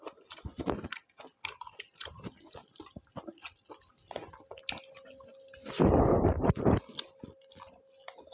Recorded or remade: recorded